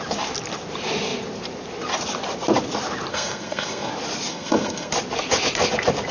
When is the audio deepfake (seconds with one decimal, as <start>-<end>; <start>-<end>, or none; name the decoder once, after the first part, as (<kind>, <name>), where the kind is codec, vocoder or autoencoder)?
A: 3.1-3.9 (codec, SNAC); 4.3-4.9